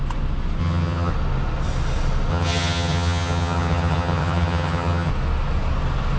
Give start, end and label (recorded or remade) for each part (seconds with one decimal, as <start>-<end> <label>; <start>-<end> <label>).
0.0-0.6 recorded; 0.6-1.1 remade; 1.1-2.3 recorded; 2.3-5.1 remade; 5.1-6.2 recorded